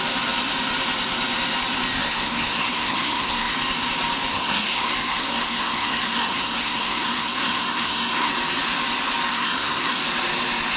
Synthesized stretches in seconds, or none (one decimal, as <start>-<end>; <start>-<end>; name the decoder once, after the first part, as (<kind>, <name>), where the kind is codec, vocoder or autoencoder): 2.0-3.5 (codec, SNAC); 4.3-8.3; 9.3-10.0